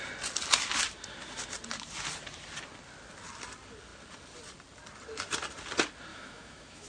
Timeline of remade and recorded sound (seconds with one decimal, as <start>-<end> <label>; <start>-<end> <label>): 0.0-6.1 recorded; 6.1-6.9 remade